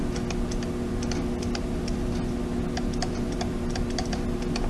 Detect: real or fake real